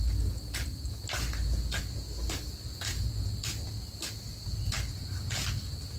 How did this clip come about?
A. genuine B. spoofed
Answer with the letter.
A